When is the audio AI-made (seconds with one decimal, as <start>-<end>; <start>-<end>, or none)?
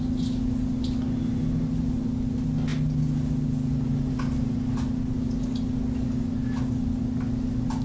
none